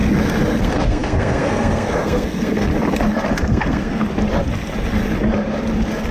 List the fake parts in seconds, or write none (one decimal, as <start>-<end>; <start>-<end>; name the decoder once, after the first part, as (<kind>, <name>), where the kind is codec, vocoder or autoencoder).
0.6-2.7 (codec, SNAC); 3.4-4.0